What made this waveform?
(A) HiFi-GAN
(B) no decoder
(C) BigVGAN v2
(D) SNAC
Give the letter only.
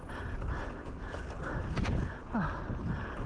B